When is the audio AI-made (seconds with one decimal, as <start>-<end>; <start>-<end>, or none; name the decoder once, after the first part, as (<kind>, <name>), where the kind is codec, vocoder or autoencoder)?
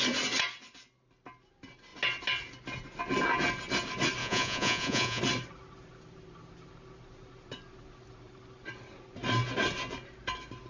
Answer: 4.2-5.2 (vocoder, Vocos)